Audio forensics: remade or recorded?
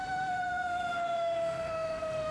remade